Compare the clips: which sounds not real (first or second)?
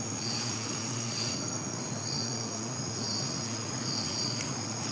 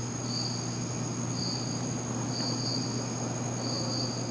first